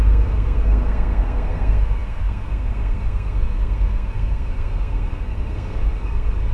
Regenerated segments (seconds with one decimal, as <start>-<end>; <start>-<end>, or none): 0.0-6.5